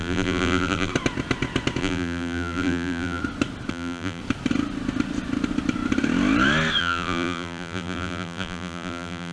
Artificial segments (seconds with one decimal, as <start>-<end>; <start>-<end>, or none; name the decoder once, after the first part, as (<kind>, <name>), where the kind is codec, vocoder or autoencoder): 0.0-0.9 (vocoder, BigVGAN v2); 1.8-3.2; 3.7-4.2; 6.8-9.3